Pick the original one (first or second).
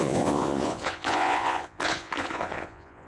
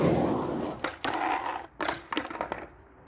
second